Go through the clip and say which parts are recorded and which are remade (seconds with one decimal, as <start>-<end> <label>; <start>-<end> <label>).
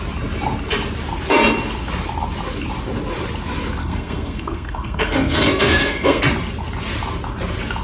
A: 0.0-3.8 recorded; 3.8-6.2 remade; 6.2-7.8 recorded